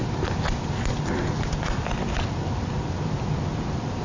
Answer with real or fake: real